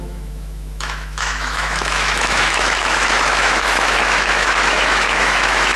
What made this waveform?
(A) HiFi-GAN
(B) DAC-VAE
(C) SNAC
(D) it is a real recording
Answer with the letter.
B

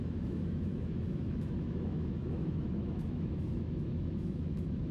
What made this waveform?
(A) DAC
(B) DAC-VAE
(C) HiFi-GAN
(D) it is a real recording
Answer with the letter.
B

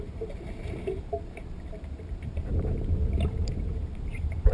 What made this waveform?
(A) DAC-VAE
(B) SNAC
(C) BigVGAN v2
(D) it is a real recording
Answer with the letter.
C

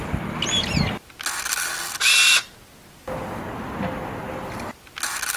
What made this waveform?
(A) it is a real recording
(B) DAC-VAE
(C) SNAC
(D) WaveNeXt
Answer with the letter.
A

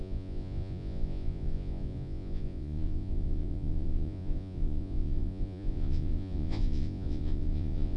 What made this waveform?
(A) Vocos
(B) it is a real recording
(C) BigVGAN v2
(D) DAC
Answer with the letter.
A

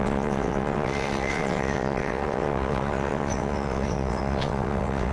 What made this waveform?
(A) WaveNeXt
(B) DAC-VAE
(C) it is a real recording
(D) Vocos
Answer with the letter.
A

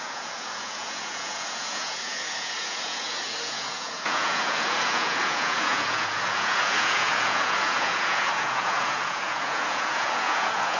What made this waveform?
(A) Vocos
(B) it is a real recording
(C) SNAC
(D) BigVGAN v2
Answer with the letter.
A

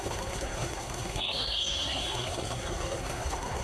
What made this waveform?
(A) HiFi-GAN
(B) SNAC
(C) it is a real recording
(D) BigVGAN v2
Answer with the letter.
B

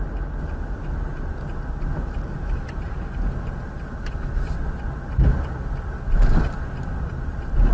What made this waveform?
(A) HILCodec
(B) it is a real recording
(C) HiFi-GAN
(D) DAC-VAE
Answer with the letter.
B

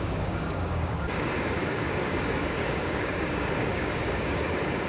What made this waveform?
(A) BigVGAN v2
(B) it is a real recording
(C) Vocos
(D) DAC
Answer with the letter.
D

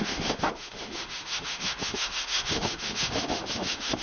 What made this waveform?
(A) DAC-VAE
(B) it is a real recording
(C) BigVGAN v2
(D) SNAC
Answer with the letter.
A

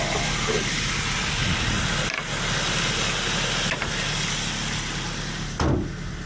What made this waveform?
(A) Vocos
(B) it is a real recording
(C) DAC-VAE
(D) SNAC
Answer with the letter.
B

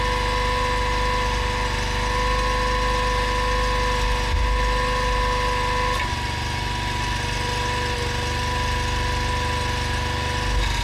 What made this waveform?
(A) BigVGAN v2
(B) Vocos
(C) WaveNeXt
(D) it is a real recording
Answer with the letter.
D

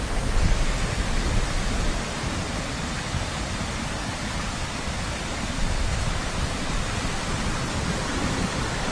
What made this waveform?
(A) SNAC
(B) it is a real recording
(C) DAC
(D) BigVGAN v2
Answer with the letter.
B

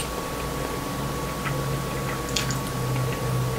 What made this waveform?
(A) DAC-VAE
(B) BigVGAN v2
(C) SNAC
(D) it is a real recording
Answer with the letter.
D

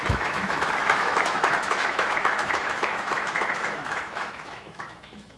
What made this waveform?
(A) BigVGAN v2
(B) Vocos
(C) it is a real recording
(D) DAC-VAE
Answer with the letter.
D